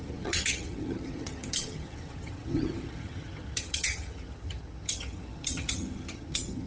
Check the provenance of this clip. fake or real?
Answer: fake